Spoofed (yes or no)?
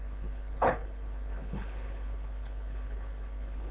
yes